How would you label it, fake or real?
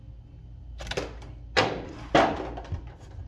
real